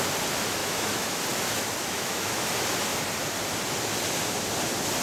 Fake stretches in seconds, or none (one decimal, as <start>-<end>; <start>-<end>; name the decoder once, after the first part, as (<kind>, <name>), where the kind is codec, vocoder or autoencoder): 0.6-1.2 (autoencoder, DAC-VAE); 1.8-2.5